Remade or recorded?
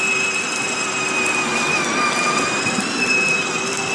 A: recorded